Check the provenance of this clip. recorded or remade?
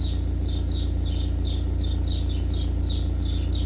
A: recorded